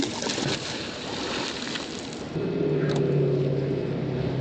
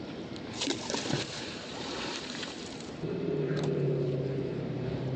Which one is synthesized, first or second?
second